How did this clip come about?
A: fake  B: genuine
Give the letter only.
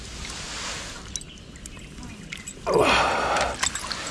B